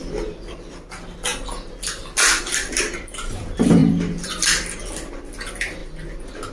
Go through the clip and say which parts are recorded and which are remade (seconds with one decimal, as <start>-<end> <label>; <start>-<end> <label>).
0.0-1.3 remade; 1.3-2.4 recorded; 2.4-5.8 remade; 5.8-6.5 recorded